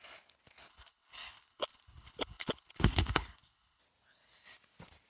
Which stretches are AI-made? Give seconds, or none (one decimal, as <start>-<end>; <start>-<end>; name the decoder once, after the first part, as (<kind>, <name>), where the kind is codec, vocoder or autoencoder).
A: 0.7-3.8 (codec, HILCodec)